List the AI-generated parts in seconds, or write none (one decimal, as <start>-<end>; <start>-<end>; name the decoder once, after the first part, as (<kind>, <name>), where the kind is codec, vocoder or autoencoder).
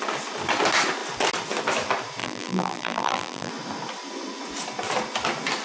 2.2-3.5 (vocoder, BigVGAN v2)